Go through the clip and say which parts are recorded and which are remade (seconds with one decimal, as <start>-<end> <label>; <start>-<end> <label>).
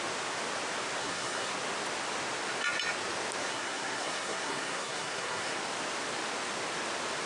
0.0-1.0 recorded; 1.0-1.5 remade; 1.5-3.4 recorded; 3.4-5.6 remade; 5.6-7.3 recorded